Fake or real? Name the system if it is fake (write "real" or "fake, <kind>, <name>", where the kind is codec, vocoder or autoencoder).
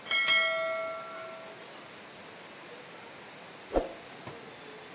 real